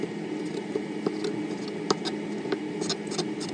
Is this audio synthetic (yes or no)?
no